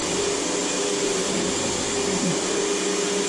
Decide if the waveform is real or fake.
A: real